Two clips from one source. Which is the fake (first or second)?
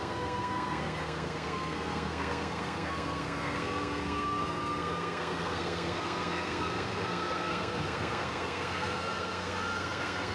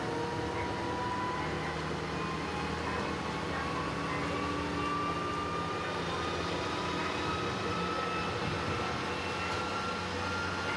first